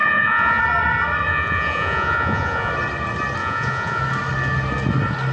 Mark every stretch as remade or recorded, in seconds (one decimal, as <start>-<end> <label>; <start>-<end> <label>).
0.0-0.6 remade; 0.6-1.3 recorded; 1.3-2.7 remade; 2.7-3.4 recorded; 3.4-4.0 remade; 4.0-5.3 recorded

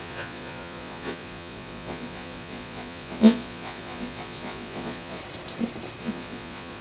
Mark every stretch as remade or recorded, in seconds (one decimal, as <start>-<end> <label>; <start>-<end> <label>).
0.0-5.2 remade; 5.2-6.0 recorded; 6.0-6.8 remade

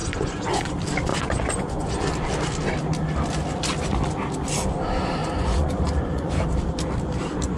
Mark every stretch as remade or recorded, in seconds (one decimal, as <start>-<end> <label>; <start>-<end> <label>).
0.0-0.7 remade; 0.7-1.1 recorded; 1.1-1.9 remade; 1.9-5.2 recorded; 5.2-6.3 remade; 6.3-7.6 recorded